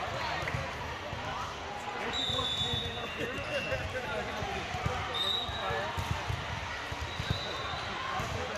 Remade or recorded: recorded